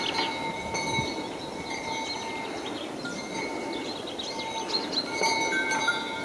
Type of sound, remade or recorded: recorded